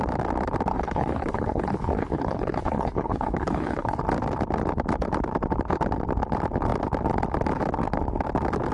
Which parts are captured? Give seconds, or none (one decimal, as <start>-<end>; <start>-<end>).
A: 0.0-0.7; 4.0-8.7